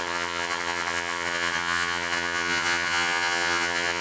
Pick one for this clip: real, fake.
fake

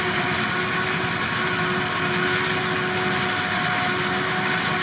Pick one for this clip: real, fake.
real